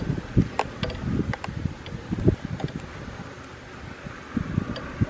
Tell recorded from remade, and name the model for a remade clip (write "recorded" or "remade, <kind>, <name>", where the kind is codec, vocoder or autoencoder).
recorded